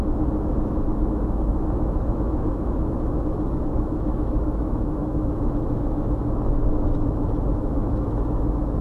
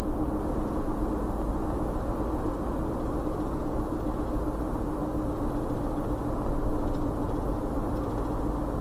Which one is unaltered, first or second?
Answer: second